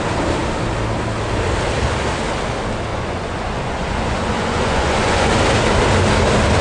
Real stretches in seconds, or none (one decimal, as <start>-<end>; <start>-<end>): 0.0-2.9; 5.4-6.6